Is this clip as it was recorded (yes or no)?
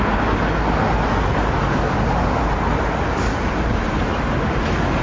yes